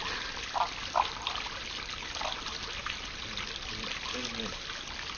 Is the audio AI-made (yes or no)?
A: no